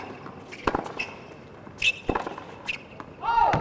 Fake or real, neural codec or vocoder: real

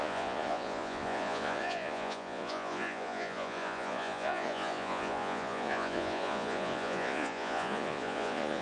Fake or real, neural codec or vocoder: fake, vocoder, Vocos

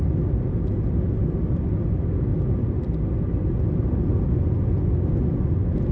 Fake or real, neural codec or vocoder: real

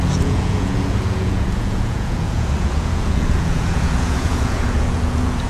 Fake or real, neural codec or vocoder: fake, vocoder, Vocos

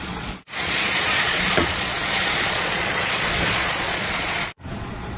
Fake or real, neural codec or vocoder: fake, vocoder, Vocos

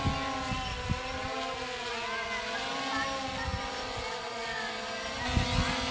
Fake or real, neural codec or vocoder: real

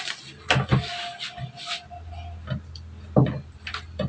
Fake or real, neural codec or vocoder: real